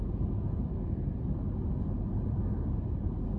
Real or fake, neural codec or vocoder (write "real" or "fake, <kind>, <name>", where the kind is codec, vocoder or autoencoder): real